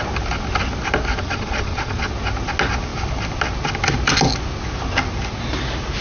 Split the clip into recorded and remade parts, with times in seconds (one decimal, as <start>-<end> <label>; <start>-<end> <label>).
0.0-1.1 recorded; 1.1-2.0 remade; 2.0-6.0 recorded